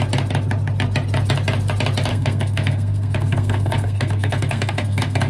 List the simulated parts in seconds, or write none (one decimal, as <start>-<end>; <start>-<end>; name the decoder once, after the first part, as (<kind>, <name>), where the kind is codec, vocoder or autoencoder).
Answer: 2.1-5.3 (codec, SNAC)